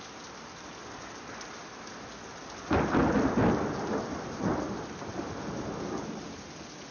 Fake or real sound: real